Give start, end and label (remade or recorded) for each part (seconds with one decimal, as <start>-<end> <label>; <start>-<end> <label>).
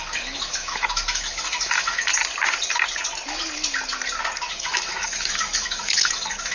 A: 0.0-2.1 remade; 2.1-4.5 recorded; 4.5-6.5 remade